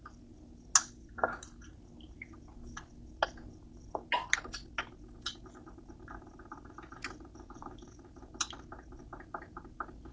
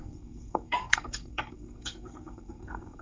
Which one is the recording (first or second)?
first